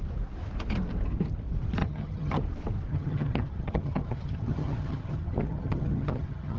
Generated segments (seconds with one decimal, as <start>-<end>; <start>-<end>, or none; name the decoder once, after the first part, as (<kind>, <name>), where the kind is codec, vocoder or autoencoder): 1.8-2.4 (vocoder, HiFi-GAN); 2.9-6.6